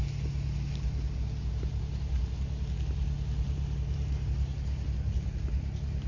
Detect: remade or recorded recorded